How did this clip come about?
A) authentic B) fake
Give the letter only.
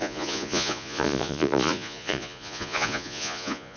B